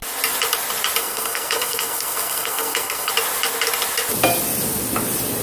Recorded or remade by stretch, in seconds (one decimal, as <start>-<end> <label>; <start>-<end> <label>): 0.0-1.0 recorded; 1.0-3.1 remade; 3.1-5.4 recorded